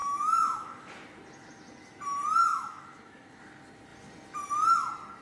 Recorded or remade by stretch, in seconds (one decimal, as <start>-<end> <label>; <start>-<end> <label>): 0.0-0.9 remade; 0.9-2.5 recorded; 2.5-3.4 remade; 3.4-5.2 recorded